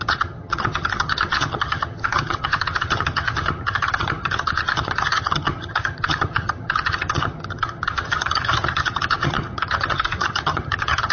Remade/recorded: remade